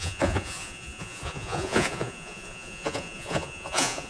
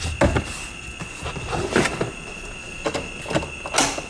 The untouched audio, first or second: second